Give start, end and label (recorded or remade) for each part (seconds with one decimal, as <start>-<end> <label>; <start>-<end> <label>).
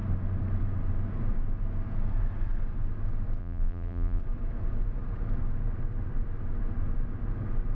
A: 0.0-3.4 recorded; 3.4-4.2 remade; 4.2-7.7 recorded